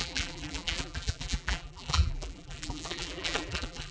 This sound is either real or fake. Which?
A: fake